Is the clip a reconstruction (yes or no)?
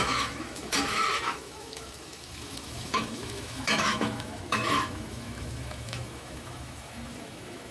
yes